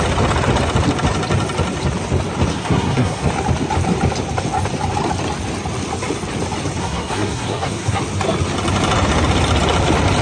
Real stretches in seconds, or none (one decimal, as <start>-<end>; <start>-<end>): 0.0-2.5; 3.3-6.8; 8.0-10.2